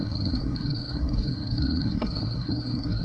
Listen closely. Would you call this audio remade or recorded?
remade